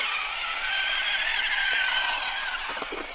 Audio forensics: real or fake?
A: real